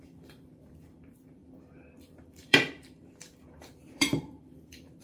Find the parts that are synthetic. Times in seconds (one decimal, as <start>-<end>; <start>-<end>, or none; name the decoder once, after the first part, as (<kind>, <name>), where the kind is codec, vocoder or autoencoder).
0.0-5.0 (vocoder, BigVGAN v2)